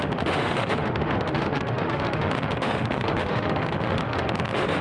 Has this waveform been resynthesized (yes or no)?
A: yes